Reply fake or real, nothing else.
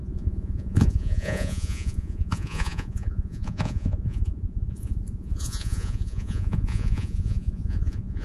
fake